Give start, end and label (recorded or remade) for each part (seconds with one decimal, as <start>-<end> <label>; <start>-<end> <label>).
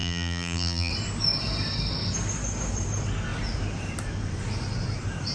0.0-0.9 remade; 0.9-5.3 recorded